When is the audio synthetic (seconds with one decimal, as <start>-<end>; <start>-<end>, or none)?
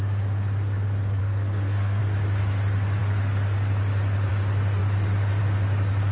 1.2-2.0